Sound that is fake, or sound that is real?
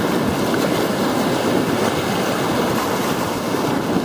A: real